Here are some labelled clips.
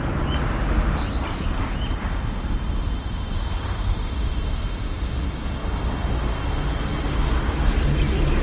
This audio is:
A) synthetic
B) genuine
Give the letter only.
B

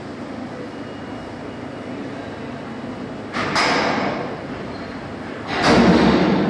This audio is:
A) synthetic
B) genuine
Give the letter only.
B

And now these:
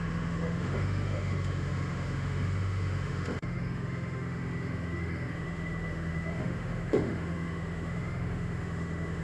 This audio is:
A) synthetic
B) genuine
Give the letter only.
A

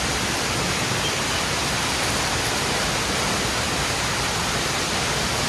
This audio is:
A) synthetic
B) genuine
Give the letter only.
B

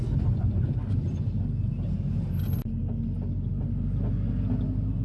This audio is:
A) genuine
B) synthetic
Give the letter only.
A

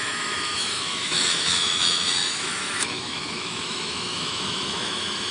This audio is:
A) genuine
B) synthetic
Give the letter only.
B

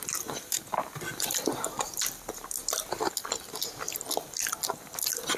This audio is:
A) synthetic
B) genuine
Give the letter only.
B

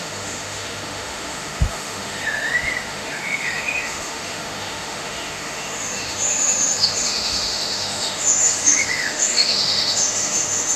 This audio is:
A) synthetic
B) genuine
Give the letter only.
A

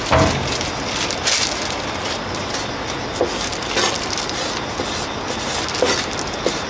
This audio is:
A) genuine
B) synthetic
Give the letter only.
A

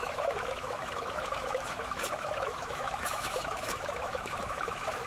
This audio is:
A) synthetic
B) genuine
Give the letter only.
A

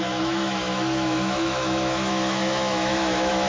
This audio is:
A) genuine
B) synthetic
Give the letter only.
B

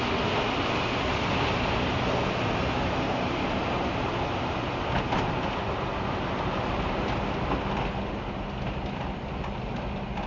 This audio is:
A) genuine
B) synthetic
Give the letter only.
A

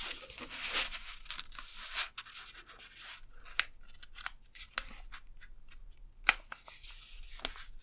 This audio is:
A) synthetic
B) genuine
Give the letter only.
B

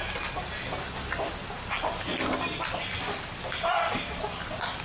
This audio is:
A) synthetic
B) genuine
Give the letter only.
B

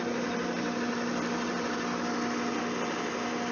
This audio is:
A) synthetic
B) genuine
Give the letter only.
B